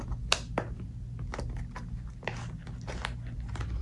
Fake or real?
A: real